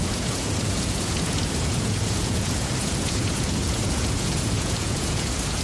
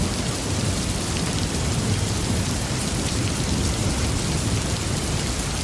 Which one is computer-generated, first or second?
first